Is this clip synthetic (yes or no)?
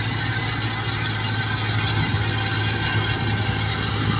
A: no